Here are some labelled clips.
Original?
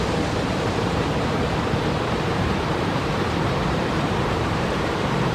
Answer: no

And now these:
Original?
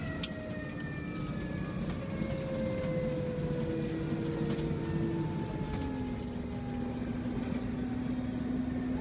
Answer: yes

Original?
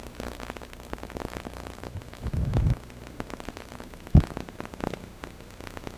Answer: no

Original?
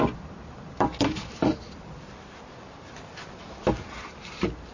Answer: yes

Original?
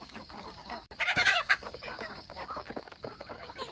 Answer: no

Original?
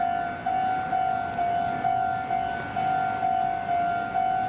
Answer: yes